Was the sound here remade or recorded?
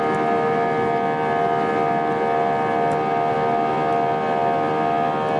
recorded